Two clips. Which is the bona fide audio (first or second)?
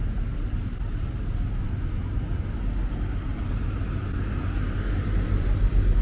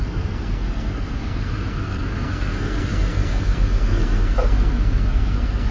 first